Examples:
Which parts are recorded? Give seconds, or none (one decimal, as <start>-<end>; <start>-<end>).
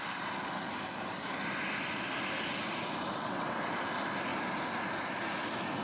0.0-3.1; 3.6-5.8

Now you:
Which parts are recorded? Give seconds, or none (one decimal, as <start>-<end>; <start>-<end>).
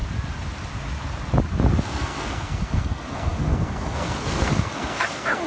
0.0-1.8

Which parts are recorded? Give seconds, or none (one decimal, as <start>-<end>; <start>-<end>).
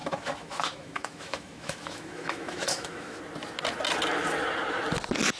3.2-5.4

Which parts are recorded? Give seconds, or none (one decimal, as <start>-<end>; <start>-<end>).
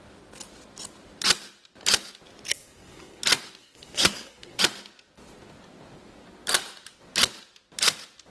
0.0-2.5; 3.2-3.6; 4.6-8.3